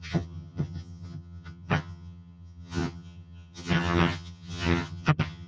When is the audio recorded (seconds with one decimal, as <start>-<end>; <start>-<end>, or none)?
none